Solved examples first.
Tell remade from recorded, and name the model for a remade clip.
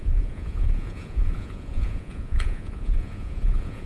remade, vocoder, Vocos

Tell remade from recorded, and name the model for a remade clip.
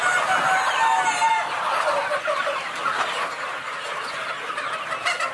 recorded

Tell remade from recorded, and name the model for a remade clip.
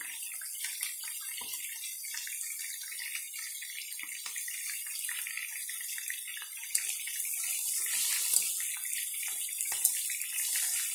recorded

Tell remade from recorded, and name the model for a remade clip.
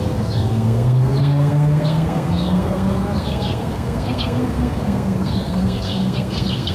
remade, codec, SNAC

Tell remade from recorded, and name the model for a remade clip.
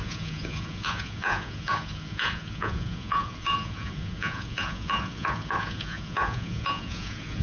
remade, vocoder, Vocos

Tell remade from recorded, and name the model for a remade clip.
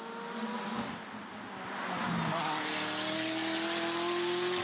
recorded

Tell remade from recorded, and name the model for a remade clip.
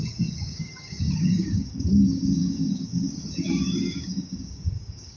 remade, codec, DAC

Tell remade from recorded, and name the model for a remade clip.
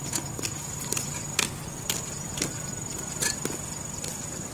recorded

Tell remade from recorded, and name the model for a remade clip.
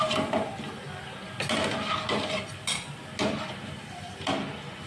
recorded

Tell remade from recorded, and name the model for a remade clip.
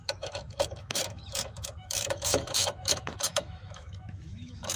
remade, autoencoder, DAC-VAE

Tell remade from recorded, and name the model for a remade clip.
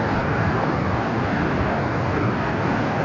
remade, codec, DAC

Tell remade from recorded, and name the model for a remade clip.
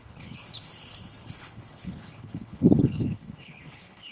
remade, codec, HILCodec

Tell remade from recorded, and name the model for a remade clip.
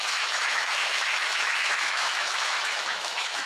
remade, autoencoder, DAC-VAE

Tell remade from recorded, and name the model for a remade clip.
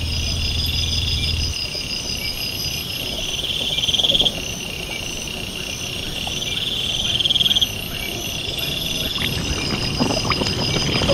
recorded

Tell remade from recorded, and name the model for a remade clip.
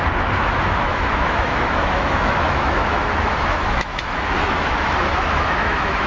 remade, autoencoder, DAC-VAE